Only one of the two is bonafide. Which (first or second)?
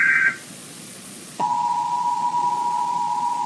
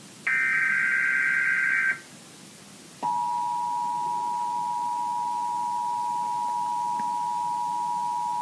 second